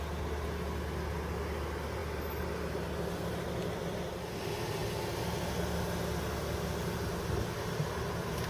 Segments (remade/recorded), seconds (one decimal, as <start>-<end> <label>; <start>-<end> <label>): 0.0-8.5 recorded